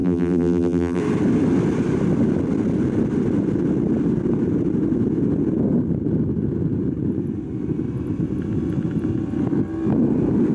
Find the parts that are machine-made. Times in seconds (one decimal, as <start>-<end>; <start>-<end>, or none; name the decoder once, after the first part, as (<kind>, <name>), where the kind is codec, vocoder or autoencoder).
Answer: 0.0-1.0 (vocoder, BigVGAN v2)